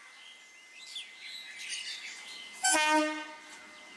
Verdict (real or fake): real